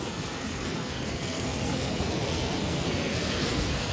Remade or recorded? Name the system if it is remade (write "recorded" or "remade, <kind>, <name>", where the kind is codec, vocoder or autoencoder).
remade, codec, SNAC